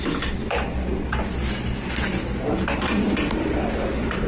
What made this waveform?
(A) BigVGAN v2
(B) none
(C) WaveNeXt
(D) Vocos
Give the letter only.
B